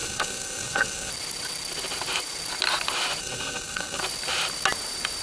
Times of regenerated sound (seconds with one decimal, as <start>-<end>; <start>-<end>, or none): 0.0-1.1; 3.2-4.0